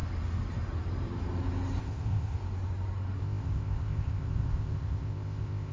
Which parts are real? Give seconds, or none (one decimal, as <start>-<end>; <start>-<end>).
0.0-1.8; 2.4-3.2